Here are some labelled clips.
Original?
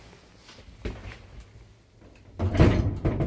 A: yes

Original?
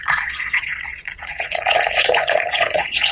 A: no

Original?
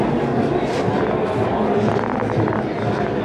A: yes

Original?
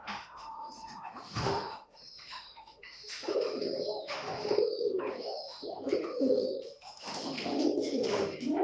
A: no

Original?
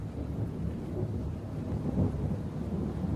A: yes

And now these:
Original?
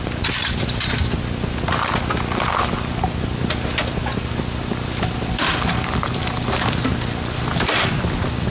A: yes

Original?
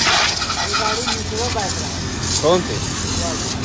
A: yes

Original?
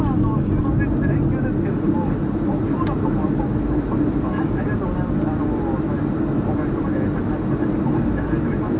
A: yes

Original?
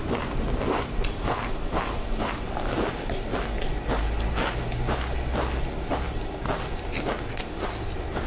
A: yes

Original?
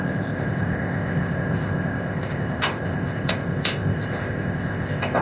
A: no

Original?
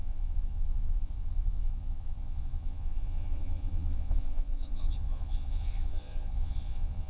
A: no